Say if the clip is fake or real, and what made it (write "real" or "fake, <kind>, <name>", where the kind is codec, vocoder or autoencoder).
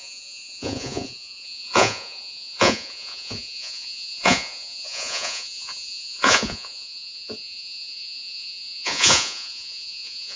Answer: fake, vocoder, Vocos